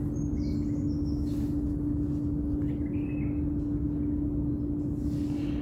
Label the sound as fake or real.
real